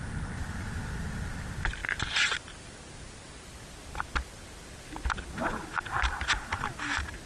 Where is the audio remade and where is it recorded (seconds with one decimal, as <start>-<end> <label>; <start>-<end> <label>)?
0.0-7.3 recorded

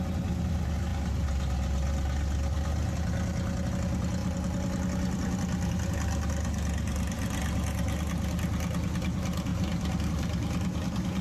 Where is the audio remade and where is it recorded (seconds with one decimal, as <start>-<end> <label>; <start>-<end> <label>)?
0.0-4.2 recorded; 4.2-5.9 remade; 5.9-11.2 recorded

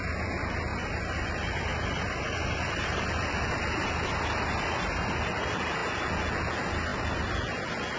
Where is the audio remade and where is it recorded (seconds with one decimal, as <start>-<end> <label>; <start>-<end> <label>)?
0.0-0.7 recorded; 0.7-5.1 remade; 5.1-8.0 recorded

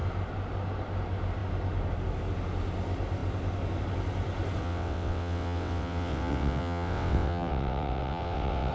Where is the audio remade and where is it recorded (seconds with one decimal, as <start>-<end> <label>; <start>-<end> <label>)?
0.0-4.6 recorded; 4.6-8.7 remade

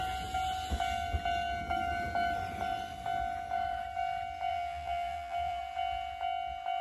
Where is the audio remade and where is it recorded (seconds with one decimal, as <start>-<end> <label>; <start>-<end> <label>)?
0.0-4.5 recorded; 4.5-5.6 remade; 5.6-6.8 recorded

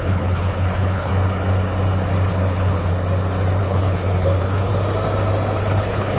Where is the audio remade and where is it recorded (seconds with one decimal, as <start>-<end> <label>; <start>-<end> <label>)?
0.0-1.1 remade; 1.1-2.3 recorded; 2.3-2.9 remade; 2.9-3.6 recorded; 3.6-4.7 remade; 4.7-5.6 recorded; 5.6-6.2 remade

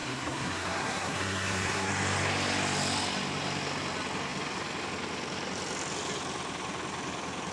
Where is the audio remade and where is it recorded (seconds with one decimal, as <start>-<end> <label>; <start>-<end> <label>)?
0.0-1.9 remade; 1.9-7.5 recorded